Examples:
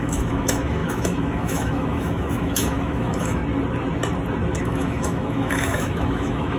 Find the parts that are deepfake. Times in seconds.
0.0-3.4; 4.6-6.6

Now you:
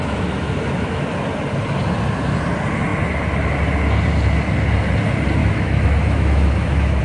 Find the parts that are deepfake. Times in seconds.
0.0-1.0; 5.4-7.0

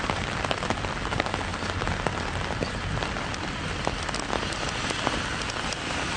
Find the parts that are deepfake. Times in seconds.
none

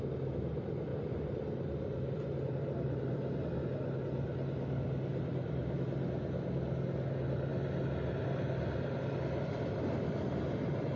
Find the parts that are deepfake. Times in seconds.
0.9-3.6; 5.1-5.6

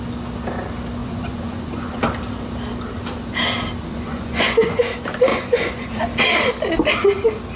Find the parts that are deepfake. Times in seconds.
1.0-2.0; 3.9-4.8; 5.3-5.9

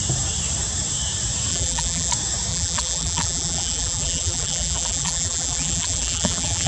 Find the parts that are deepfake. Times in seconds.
1.5-2.1; 2.5-6.7

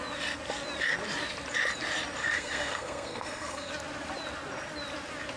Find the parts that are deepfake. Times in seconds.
2.2-3.7